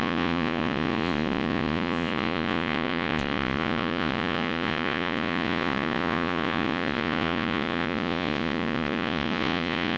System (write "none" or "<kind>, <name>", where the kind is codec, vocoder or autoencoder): vocoder, Vocos